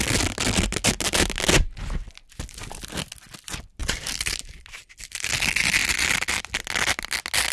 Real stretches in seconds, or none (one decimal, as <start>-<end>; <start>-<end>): 0.0-3.8; 4.6-7.5